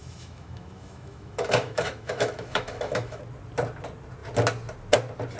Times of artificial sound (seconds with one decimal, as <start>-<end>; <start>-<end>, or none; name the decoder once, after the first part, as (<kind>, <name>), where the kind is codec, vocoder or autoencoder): 0.0-3.2 (autoencoder, DAC-VAE)